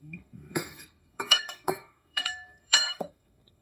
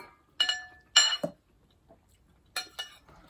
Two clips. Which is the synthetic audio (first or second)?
first